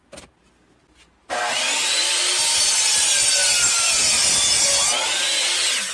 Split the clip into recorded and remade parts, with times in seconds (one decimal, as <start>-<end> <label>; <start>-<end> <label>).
0.0-5.9 recorded